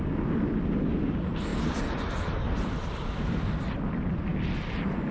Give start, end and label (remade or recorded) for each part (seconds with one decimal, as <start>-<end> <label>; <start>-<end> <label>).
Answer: 0.0-1.5 recorded; 1.5-2.8 remade; 2.8-5.1 recorded